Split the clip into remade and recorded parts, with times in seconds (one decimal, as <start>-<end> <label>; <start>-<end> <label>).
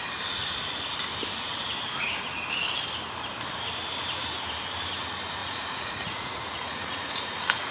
0.0-5.4 recorded; 5.4-7.7 remade